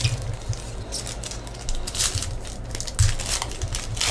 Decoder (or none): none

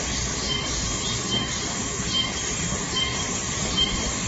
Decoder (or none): none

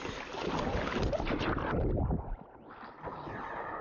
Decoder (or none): none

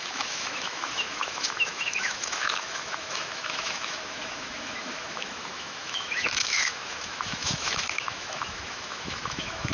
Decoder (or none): autoencoder, DAC-VAE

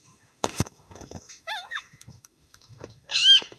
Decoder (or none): autoencoder, DAC-VAE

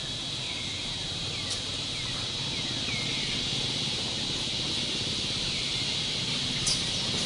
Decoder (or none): none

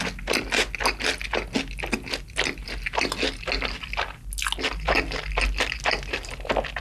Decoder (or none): none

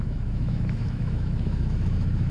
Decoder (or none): autoencoder, DAC-VAE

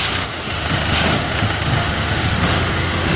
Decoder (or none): autoencoder, DAC-VAE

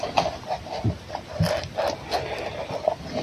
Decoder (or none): none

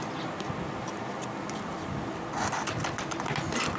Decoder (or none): none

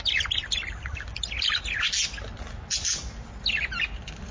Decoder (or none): none